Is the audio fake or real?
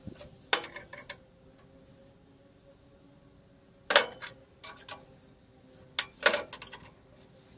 real